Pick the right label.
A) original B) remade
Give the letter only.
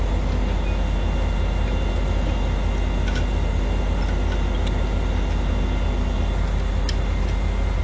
A